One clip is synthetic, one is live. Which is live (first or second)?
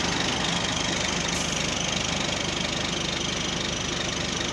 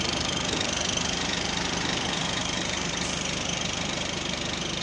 first